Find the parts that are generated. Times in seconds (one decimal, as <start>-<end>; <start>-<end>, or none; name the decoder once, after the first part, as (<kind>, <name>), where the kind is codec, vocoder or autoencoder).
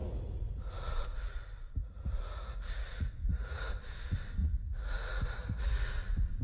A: 0.0-3.7 (vocoder, Vocos); 4.4-6.4